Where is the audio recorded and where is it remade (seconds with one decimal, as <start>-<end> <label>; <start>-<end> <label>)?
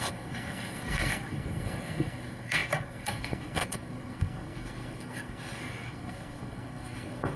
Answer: 0.0-7.4 remade